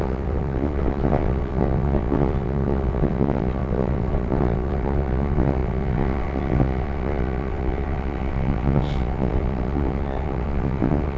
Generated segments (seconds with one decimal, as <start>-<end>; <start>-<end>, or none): 0.0-11.2